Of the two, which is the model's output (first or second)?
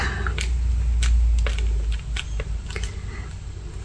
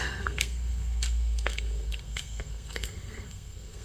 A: second